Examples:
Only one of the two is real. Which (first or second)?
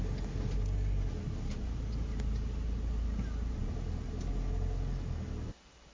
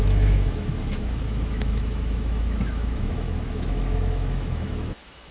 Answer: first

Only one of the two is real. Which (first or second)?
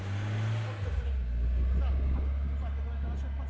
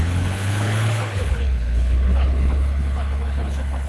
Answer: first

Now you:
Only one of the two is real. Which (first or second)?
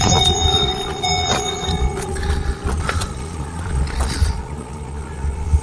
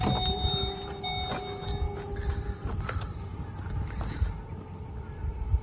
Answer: second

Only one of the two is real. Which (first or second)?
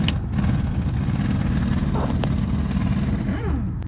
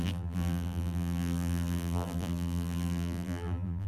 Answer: first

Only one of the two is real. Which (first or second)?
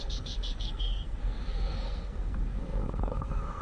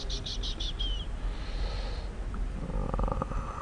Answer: second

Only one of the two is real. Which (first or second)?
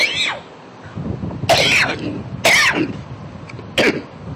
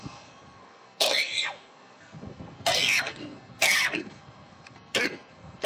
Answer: first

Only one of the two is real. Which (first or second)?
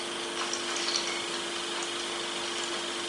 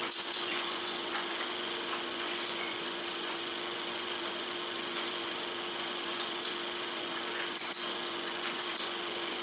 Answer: first